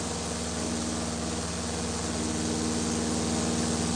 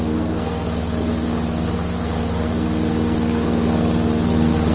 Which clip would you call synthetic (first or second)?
second